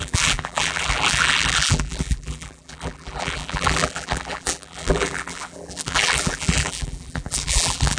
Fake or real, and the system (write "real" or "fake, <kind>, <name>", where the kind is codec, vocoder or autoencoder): fake, vocoder, BigVGAN v2